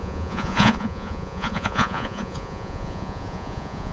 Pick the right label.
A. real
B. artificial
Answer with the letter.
B